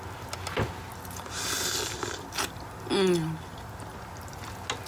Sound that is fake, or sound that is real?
real